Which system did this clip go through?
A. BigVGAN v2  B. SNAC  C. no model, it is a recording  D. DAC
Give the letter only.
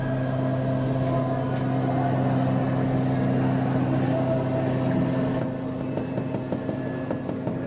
C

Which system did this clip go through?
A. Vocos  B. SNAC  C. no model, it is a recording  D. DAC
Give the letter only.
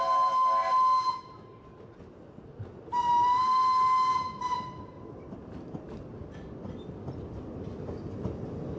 C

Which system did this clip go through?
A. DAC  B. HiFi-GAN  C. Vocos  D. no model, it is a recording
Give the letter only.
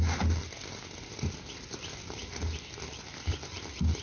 D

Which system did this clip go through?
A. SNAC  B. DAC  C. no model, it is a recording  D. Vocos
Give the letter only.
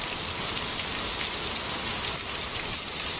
C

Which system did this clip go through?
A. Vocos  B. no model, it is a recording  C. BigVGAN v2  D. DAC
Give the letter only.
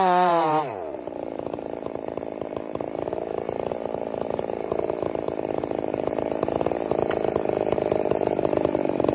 C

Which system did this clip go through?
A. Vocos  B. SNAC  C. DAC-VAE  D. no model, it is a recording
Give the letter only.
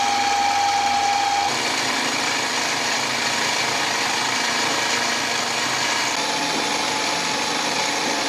D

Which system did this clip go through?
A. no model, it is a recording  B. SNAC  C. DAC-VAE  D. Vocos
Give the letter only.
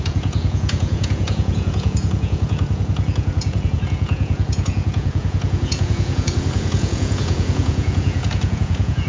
D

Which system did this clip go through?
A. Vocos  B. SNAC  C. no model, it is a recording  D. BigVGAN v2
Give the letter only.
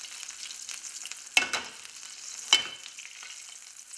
C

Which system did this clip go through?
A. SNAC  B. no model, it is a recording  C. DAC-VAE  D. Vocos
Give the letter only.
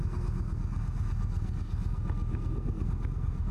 A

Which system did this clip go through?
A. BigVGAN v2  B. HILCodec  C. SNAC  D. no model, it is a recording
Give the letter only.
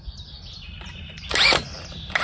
D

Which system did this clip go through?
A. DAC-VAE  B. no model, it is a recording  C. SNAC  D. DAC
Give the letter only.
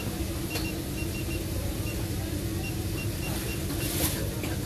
B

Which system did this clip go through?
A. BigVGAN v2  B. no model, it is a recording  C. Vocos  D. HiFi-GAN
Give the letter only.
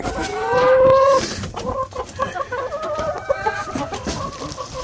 B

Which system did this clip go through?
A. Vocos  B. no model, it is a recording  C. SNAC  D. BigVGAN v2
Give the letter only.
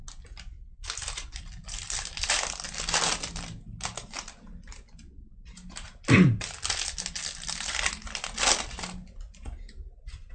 B